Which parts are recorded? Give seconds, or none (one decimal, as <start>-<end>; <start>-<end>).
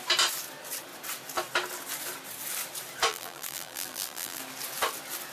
0.0-3.1; 4.4-5.3